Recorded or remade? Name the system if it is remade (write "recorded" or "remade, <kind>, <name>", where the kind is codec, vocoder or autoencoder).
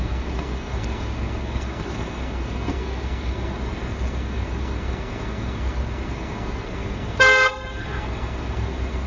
remade, codec, SNAC